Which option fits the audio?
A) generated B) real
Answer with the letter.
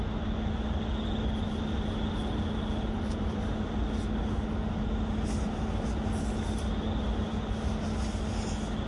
B